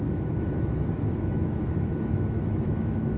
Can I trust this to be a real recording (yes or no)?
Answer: no